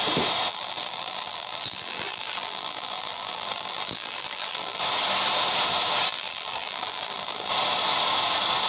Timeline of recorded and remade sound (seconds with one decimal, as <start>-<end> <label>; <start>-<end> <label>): 0.0-0.5 recorded; 0.5-4.8 remade; 4.8-6.1 recorded; 6.1-7.5 remade; 7.5-8.7 recorded